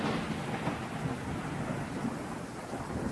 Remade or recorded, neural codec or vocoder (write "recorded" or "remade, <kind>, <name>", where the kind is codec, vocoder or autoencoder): recorded